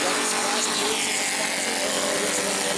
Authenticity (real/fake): real